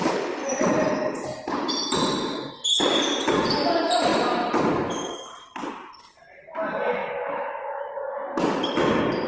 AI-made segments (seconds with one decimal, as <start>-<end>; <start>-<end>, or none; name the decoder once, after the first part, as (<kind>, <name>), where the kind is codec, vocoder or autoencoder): 7.0-7.9 (autoencoder, DAC-VAE)